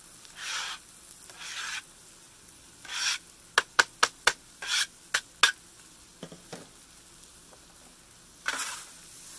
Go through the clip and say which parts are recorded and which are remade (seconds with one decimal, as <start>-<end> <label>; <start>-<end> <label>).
0.0-9.4 recorded